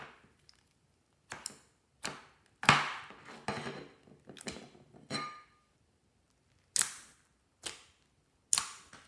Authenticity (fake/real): real